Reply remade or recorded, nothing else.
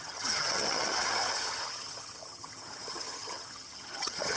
remade